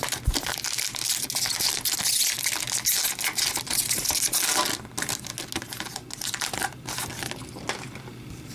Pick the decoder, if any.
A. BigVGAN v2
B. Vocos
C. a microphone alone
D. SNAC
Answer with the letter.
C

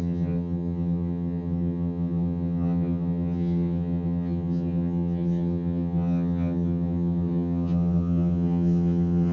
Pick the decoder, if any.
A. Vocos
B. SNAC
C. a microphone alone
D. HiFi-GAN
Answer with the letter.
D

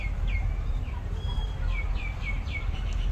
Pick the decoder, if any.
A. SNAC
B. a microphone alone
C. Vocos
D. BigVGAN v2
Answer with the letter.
D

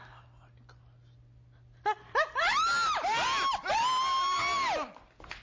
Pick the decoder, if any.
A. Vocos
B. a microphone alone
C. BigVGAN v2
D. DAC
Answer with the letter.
B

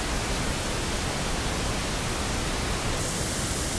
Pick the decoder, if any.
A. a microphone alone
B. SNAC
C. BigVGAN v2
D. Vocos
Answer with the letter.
A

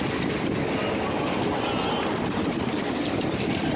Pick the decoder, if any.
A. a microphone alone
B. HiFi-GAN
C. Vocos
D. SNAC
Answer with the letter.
A